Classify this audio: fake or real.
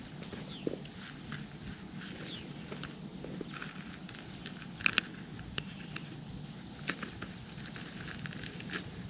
real